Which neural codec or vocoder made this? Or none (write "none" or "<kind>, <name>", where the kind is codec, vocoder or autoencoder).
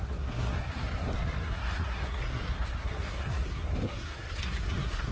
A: codec, SNAC